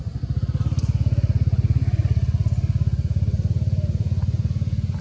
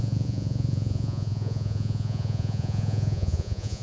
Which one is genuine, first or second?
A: first